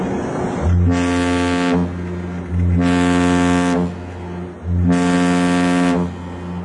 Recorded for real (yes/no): yes